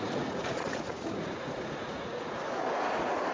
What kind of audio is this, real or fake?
fake